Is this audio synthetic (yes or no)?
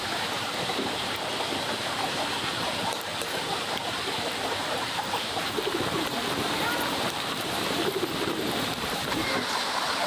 yes